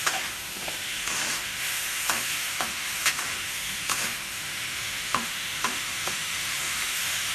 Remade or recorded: remade